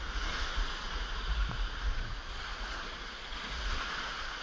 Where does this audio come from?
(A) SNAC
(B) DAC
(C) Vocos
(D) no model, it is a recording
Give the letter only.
C